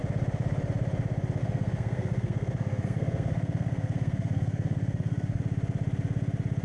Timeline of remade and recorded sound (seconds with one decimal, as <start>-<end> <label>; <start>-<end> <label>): 0.0-1.4 recorded; 1.4-5.4 remade; 5.4-6.6 recorded